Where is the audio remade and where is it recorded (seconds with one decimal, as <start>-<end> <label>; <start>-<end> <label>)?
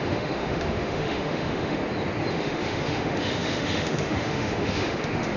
0.0-1.8 remade; 1.8-2.3 recorded; 2.3-5.4 remade